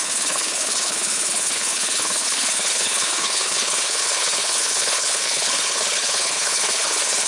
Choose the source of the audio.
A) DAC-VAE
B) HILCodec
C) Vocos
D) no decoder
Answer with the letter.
B